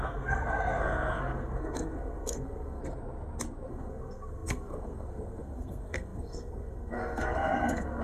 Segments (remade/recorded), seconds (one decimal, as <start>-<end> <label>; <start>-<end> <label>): 0.0-2.8 remade; 2.8-3.7 recorded; 3.7-8.0 remade